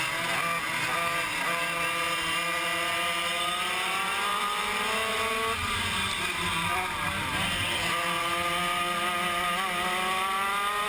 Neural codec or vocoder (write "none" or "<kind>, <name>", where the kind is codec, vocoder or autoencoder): none